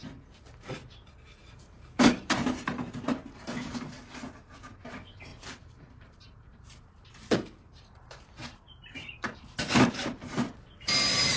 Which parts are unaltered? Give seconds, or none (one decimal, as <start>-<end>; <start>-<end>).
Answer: 0.0-1.3; 2.1-5.3; 9.7-11.4